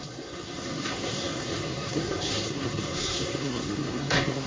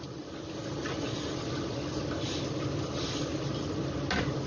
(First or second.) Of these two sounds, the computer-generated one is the first